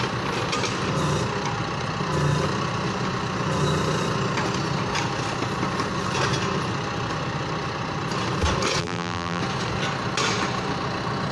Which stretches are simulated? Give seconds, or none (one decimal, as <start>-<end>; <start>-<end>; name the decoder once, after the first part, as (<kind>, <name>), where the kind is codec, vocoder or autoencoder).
8.8-9.4 (vocoder, BigVGAN v2)